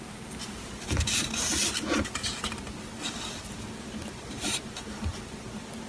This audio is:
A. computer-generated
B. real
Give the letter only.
B